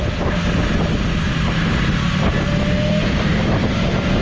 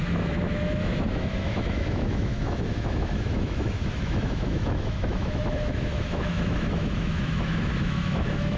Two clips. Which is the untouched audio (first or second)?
first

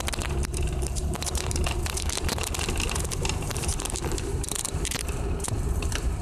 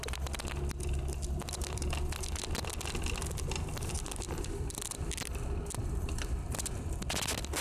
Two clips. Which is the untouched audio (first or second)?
second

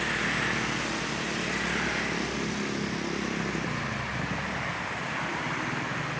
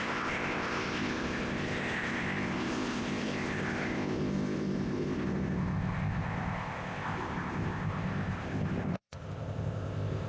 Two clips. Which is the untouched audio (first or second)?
first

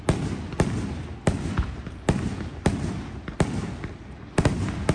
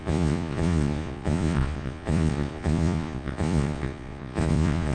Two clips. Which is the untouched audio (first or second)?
first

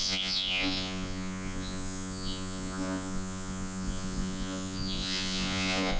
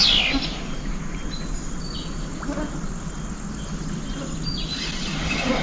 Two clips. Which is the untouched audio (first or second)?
second